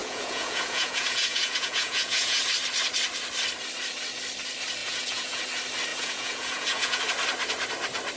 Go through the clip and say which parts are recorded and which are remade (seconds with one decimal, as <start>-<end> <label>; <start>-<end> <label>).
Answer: 0.0-2.4 remade; 2.4-4.8 recorded; 4.8-5.4 remade; 5.4-5.9 recorded; 5.9-7.0 remade; 7.0-8.2 recorded